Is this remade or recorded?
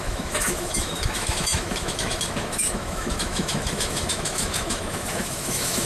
remade